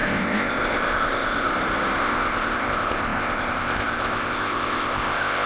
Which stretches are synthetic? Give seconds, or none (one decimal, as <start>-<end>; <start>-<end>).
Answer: 0.0-1.5; 2.0-5.5